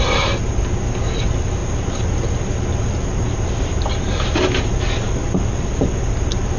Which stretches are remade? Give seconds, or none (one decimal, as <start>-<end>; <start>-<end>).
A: none